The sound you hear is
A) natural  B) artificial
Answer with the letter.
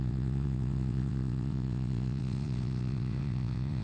B